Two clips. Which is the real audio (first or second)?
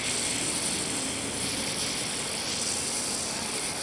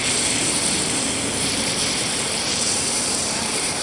first